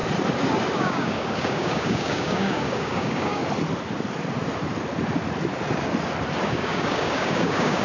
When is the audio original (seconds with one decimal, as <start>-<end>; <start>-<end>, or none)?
0.0-0.8; 3.4-6.5